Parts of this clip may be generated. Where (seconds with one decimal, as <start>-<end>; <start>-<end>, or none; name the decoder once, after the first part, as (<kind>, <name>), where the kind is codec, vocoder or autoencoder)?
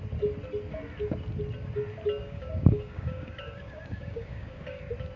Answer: 2.2-4.8 (codec, DAC)